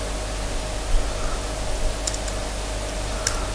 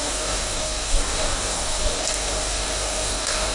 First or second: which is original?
first